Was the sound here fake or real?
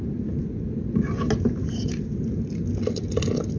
real